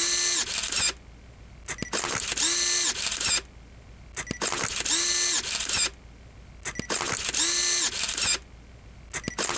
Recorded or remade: recorded